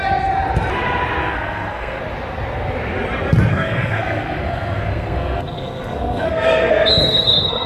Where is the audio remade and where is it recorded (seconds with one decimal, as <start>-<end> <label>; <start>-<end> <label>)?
0.0-1.2 recorded; 1.2-2.0 remade; 2.0-3.5 recorded; 3.5-7.7 remade